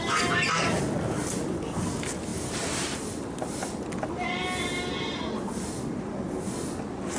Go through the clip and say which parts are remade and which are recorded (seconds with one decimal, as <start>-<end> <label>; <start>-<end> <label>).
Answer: 0.0-7.2 recorded